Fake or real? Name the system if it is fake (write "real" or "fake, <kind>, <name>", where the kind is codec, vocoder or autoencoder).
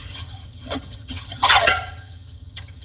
fake, vocoder, HiFi-GAN